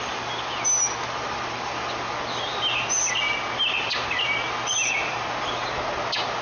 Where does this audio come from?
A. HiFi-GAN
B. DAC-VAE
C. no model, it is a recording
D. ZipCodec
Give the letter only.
C